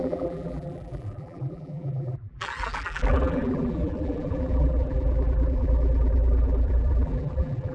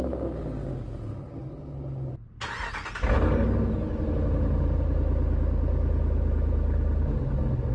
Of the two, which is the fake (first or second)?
first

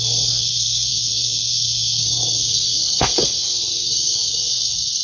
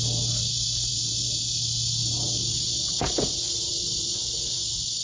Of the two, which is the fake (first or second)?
first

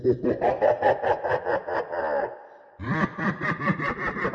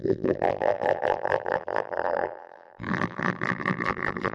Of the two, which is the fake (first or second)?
second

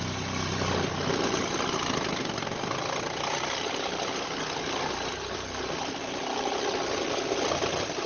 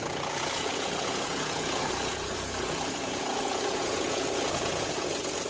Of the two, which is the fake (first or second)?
second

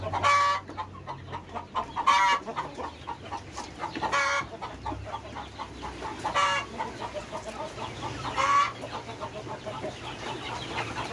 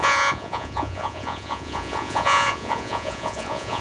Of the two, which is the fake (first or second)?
second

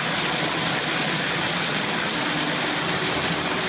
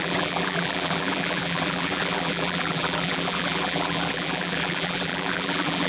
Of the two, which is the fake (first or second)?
second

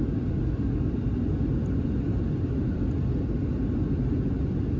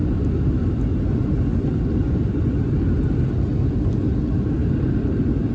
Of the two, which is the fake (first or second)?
second